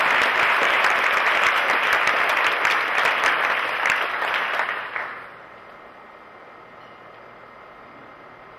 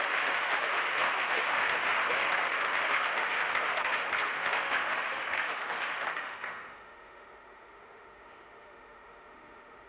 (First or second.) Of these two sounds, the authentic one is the first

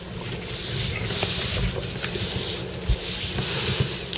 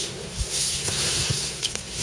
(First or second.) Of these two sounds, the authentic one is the first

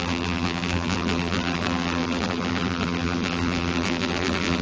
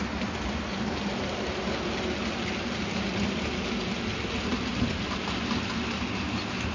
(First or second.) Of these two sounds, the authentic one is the second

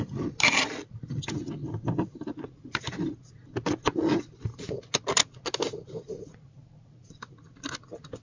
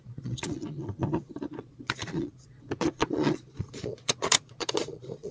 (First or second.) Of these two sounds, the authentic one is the first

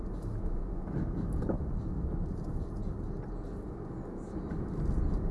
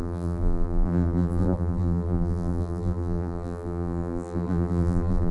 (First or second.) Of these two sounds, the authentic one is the first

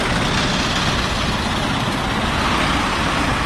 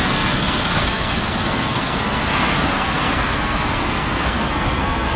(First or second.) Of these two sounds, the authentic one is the first